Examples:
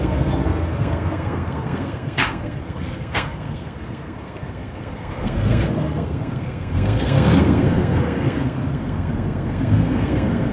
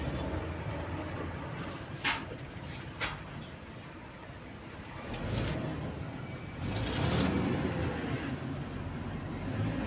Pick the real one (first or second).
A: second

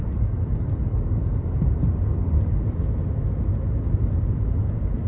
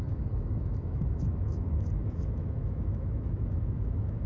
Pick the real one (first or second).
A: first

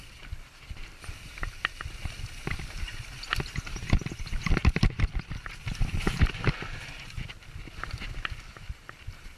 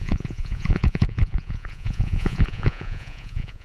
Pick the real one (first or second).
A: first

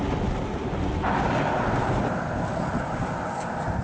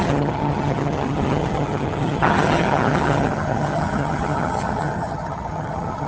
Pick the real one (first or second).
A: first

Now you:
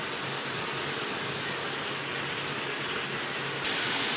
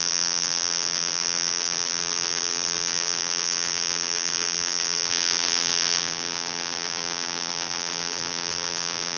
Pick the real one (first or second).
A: first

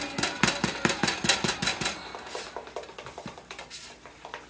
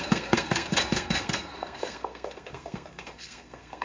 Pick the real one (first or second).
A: first